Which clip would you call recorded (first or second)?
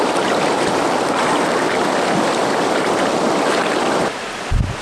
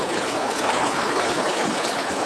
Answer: first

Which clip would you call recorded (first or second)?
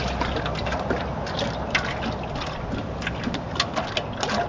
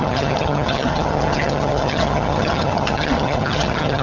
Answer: first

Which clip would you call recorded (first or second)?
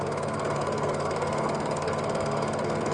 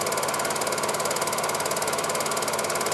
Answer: second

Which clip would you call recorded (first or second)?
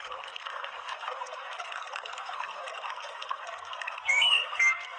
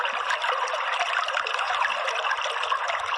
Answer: second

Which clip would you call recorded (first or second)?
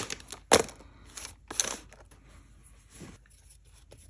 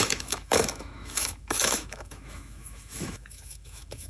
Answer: first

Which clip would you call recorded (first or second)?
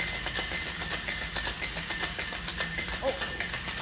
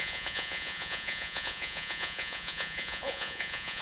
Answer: first